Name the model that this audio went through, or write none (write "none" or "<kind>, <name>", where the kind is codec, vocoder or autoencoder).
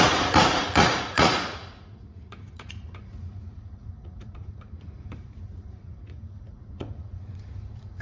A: vocoder, Vocos